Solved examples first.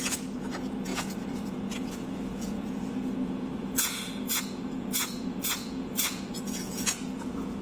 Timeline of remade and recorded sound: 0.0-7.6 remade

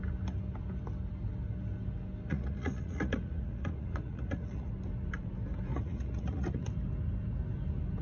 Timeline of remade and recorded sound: 0.0-2.3 recorded; 2.3-4.7 remade; 4.7-5.7 recorded; 5.7-6.6 remade; 6.6-8.0 recorded

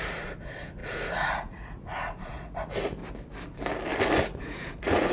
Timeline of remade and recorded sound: 0.0-3.0 remade; 3.0-4.4 recorded; 4.4-5.1 remade

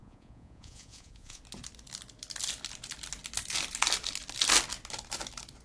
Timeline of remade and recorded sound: 0.0-1.4 remade; 1.4-5.6 recorded

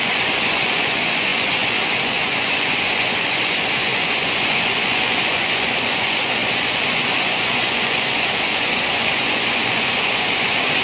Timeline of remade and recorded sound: 0.0-10.8 remade

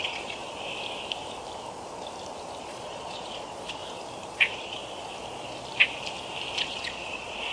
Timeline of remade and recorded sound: 0.0-0.4 remade; 0.4-2.6 recorded; 2.6-3.8 remade; 3.8-4.3 recorded; 4.3-4.8 remade; 4.8-6.6 recorded; 6.6-7.5 remade